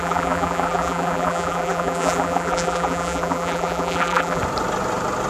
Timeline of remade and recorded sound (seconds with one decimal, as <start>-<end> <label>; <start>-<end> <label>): 0.0-4.4 remade; 4.4-5.3 recorded